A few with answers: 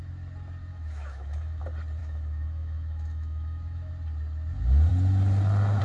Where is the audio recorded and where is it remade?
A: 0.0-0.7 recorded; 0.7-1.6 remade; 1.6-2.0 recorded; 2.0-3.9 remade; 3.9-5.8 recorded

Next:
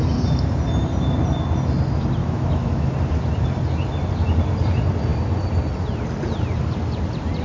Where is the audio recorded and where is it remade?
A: 0.0-2.2 recorded; 2.2-2.9 remade; 2.9-7.4 recorded